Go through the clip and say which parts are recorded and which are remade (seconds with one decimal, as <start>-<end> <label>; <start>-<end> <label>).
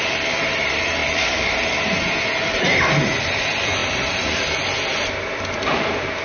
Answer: 0.0-6.2 remade